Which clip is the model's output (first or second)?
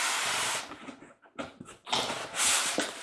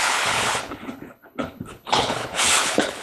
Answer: second